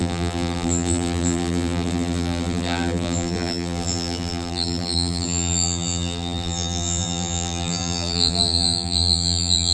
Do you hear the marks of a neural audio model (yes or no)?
yes